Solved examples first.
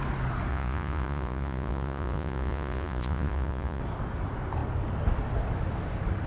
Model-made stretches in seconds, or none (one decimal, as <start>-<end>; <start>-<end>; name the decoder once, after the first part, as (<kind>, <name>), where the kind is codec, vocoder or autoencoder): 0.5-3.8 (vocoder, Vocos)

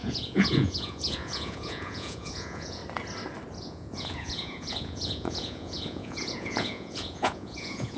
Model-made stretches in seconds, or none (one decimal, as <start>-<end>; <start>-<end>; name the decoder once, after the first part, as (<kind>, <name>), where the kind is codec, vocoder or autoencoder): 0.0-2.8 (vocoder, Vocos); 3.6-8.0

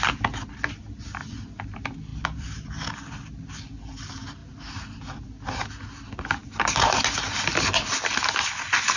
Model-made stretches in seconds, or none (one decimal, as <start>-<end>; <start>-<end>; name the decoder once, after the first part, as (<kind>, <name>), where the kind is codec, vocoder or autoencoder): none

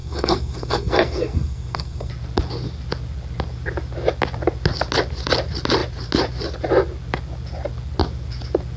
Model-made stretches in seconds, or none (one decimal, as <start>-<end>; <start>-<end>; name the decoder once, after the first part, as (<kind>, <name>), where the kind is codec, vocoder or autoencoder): 0.0-2.1 (codec, SNAC)

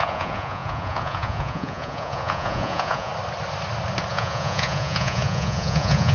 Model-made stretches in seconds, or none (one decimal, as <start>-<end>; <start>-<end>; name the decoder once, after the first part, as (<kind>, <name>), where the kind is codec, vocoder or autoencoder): 0.0-3.1 (vocoder, Vocos); 4.1-6.1

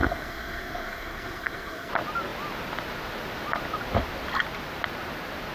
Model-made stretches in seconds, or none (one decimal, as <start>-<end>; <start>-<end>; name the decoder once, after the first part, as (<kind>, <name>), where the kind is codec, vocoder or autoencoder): 0.0-1.9 (codec, SNAC)

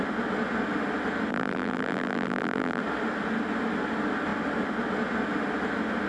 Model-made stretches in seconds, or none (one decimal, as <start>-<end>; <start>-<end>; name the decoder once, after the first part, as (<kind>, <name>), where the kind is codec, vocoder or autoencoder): 1.3-2.8 (vocoder, BigVGAN v2)